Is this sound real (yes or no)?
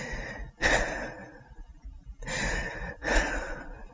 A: yes